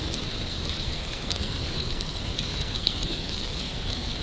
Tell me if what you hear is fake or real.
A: fake